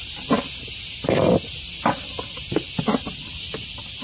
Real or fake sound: real